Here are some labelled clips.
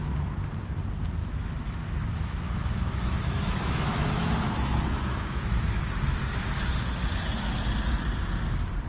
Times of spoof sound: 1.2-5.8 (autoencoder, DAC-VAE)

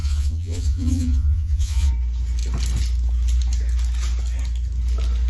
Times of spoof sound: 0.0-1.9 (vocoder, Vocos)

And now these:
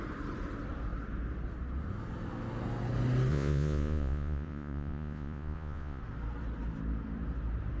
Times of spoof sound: 3.3-6.0 (vocoder, Vocos)

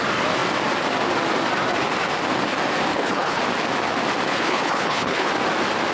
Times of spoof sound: 2.9-3.4 (codec, HILCodec); 4.3-5.3